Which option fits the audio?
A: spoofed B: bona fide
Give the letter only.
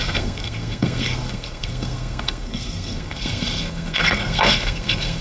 A